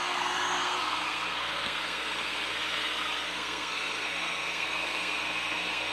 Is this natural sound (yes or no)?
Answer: no